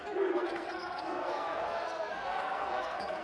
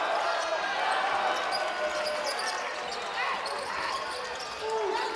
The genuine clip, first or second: second